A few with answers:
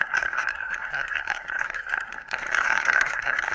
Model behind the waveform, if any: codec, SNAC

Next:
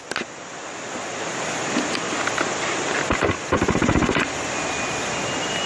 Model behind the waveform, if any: none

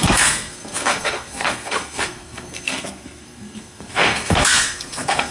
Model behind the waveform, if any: codec, SNAC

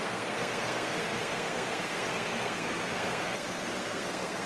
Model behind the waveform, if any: codec, SNAC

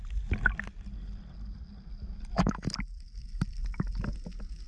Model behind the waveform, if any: none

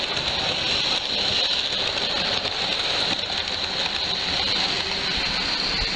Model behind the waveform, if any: none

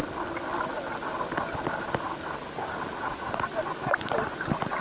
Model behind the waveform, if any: none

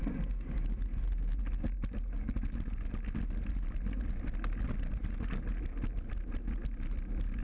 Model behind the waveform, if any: none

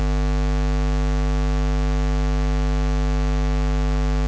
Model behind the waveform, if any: none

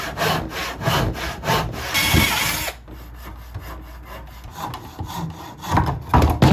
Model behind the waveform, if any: none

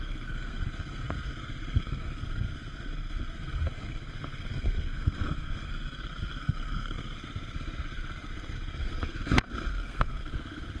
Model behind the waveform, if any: codec, SNAC